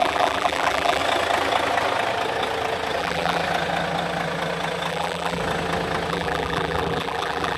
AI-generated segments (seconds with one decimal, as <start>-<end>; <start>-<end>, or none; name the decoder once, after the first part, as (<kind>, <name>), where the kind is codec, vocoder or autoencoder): 0.0-1.0 (vocoder, BigVGAN v2); 3.0-3.4; 4.9-5.4; 6.1-7.6